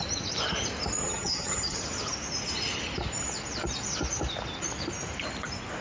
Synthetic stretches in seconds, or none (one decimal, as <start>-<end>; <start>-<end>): 1.0-1.8